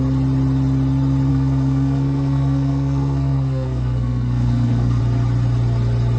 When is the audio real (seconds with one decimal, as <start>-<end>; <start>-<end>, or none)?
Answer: 0.0-1.3; 5.0-6.2